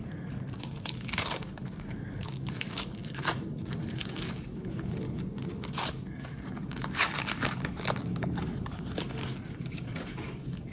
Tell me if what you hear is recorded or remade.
remade